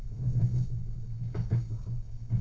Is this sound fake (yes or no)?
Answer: yes